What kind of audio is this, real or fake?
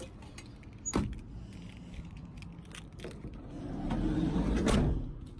real